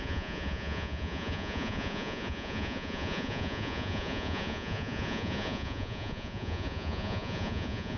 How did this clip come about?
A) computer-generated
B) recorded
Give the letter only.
A